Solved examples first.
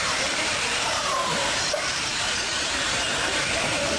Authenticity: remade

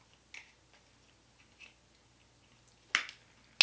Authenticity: recorded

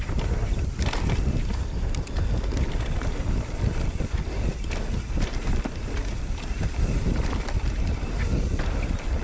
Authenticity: recorded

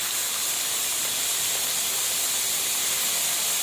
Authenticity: recorded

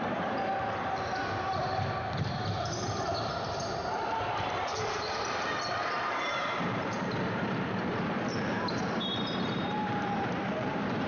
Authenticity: remade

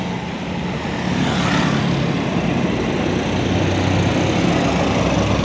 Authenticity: recorded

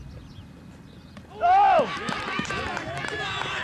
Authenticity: recorded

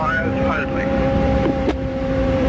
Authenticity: remade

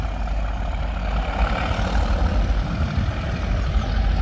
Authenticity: recorded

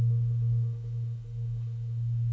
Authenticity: recorded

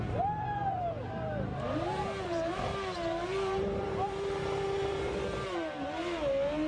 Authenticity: remade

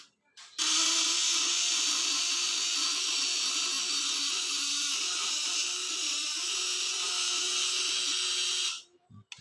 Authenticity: recorded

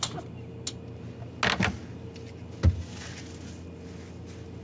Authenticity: recorded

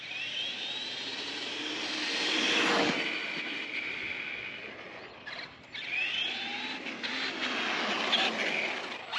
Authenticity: recorded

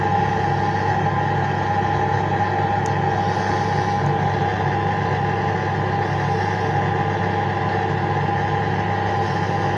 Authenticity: recorded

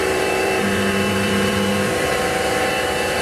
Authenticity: remade